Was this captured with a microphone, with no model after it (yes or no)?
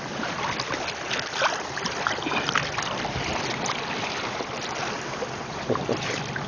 no